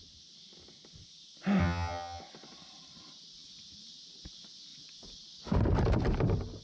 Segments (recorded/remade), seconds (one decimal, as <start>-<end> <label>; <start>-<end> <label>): 0.0-1.6 recorded; 1.6-2.2 remade; 2.2-6.6 recorded